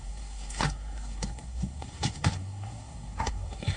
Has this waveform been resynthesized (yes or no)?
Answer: yes